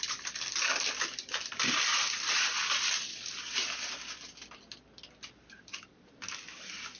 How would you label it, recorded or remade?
recorded